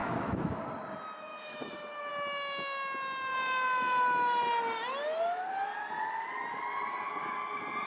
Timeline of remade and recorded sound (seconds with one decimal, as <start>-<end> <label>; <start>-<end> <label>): 0.0-0.6 remade; 0.6-1.3 recorded; 1.3-2.1 remade; 2.1-7.9 recorded